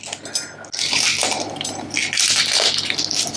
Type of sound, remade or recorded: recorded